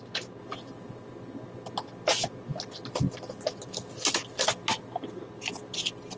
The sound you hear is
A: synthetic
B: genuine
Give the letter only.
B